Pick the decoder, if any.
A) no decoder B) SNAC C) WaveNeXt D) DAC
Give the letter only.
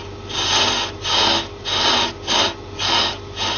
A